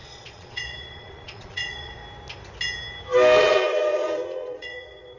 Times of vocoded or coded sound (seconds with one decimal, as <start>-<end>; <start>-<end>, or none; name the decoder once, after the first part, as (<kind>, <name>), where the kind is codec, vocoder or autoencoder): 0.0-2.0 (vocoder, Vocos); 3.4-5.2